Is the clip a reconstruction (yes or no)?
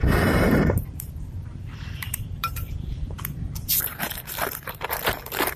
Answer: yes